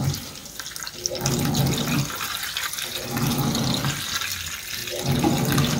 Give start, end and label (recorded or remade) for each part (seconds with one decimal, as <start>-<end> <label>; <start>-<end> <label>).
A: 0.0-5.8 recorded